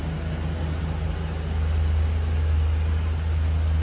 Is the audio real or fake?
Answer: real